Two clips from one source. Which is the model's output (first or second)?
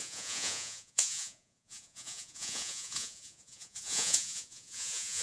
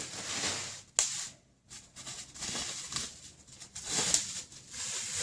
first